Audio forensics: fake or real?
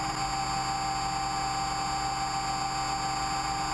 real